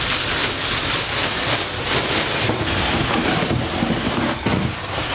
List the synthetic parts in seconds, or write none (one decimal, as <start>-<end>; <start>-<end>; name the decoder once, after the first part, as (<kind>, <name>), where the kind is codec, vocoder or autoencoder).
none